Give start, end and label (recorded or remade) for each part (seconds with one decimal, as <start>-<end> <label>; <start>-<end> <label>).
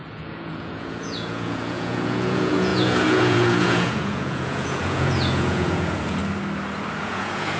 0.0-6.2 remade; 6.2-7.0 recorded; 7.0-7.6 remade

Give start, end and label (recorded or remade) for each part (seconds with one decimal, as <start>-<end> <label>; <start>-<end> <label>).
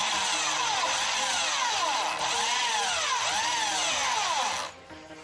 0.0-5.2 recorded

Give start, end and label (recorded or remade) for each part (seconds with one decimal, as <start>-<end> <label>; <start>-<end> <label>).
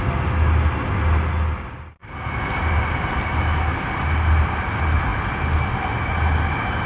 0.0-6.9 recorded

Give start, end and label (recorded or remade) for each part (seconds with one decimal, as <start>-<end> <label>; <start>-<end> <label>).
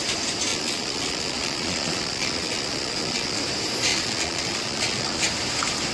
0.0-0.5 recorded; 0.5-3.4 remade; 3.4-3.9 recorded; 3.9-5.2 remade; 5.2-5.9 recorded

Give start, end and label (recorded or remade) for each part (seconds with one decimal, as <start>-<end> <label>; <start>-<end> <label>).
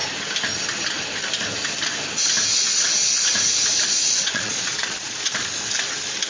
0.0-4.2 recorded; 4.2-5.4 remade; 5.4-6.3 recorded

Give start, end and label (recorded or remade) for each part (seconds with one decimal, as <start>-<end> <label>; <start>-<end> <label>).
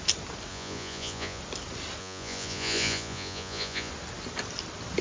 0.0-0.5 recorded; 0.5-1.4 remade; 1.4-2.0 recorded; 2.0-3.9 remade; 3.9-5.0 recorded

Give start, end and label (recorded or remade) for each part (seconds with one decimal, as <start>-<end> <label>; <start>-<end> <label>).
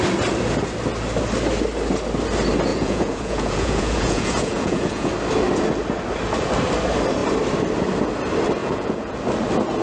0.0-2.7 recorded; 2.7-5.1 remade; 5.1-8.6 recorded; 8.6-9.1 remade; 9.1-9.8 recorded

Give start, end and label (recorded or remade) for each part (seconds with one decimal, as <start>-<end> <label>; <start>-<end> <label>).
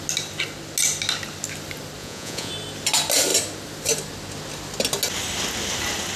0.0-2.0 recorded; 2.0-2.5 remade; 2.5-6.2 recorded